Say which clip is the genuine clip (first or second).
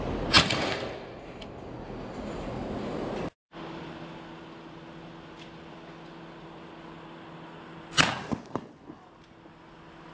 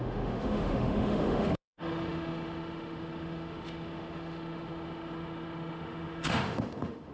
first